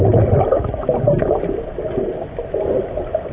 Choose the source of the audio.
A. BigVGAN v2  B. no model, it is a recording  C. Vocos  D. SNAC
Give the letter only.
B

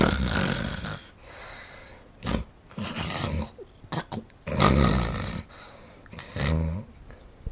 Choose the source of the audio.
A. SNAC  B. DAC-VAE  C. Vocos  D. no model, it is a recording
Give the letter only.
D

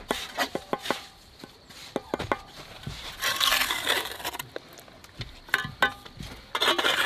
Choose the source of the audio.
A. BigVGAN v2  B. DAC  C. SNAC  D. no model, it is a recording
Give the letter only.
D